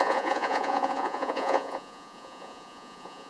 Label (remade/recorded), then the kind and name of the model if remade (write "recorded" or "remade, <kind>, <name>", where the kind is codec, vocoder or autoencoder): remade, vocoder, Vocos